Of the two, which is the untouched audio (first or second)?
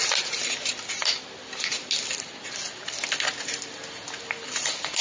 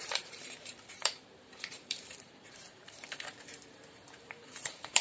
first